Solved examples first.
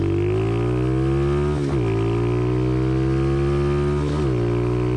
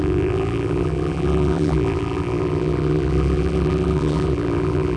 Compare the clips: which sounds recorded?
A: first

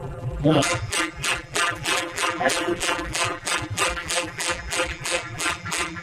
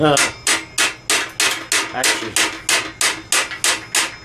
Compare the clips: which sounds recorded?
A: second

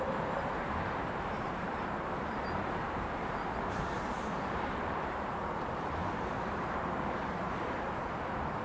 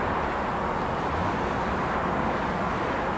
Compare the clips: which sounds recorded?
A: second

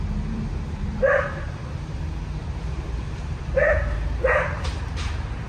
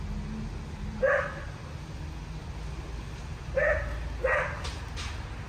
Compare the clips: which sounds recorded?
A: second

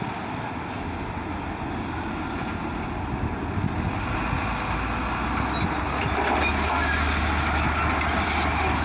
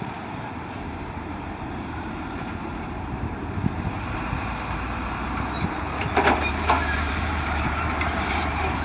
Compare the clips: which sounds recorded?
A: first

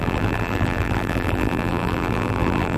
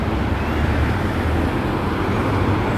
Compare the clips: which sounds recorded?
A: second